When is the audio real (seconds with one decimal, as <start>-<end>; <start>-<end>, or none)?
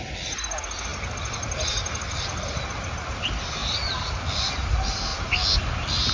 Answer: 0.0-6.1